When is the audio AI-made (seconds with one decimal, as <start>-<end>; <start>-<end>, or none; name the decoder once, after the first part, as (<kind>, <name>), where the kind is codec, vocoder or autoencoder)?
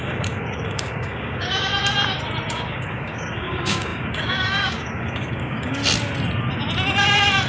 0.0-1.7 (codec, DAC); 2.5-5.8